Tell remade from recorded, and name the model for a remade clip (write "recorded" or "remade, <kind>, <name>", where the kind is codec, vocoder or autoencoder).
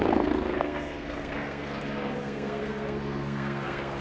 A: remade, codec, SNAC